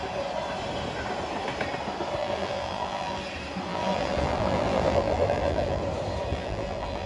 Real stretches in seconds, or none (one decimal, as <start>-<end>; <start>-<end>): 0.0-2.2; 3.2-3.7; 5.8-6.3

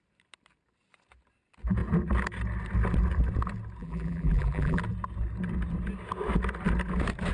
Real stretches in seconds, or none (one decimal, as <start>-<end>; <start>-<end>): 0.0-3.8; 4.8-7.3

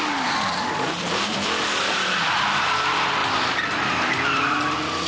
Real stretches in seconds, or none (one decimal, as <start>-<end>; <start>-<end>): 3.2-3.8

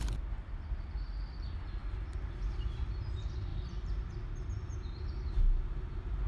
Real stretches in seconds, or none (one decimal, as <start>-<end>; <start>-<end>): 0.0-6.3

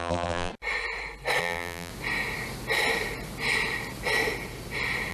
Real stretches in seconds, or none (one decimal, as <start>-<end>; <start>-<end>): 0.5-1.4; 1.9-5.1